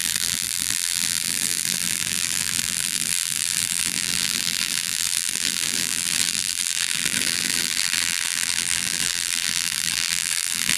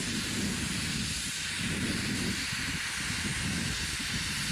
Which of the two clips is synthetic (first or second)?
first